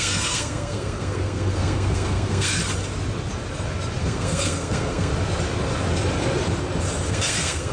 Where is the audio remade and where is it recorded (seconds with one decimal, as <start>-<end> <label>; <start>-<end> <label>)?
0.0-2.6 remade; 2.6-4.0 recorded; 4.0-5.1 remade; 5.1-7.1 recorded; 7.1-7.7 remade

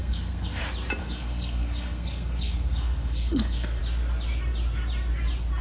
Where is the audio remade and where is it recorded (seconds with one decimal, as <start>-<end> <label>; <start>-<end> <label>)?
0.0-0.6 remade; 0.6-1.0 recorded; 1.0-3.8 remade; 3.8-5.6 recorded

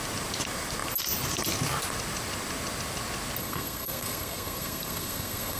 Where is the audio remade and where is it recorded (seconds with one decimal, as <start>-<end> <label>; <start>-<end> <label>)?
0.0-3.4 recorded; 3.4-5.6 remade

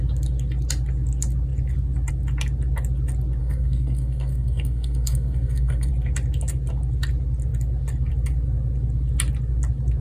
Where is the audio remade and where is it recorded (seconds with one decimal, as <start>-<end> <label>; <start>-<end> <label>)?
0.0-3.4 recorded; 3.4-5.9 remade; 5.9-10.0 recorded

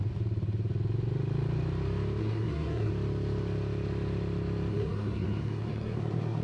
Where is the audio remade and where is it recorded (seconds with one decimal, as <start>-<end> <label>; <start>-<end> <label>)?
0.0-2.2 recorded; 2.2-2.9 remade; 2.9-4.7 recorded; 4.7-6.4 remade